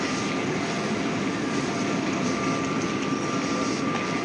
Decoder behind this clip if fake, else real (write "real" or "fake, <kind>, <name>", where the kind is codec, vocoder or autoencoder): real